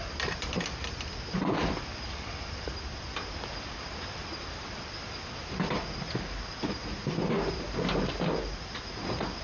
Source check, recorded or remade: recorded